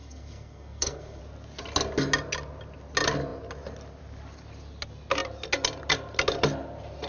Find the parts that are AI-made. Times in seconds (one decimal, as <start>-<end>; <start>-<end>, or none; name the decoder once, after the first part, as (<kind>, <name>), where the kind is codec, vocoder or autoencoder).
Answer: 0.0-1.2 (codec, SNAC)